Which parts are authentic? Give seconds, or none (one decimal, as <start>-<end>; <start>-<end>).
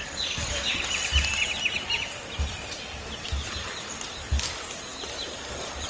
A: 0.0-5.9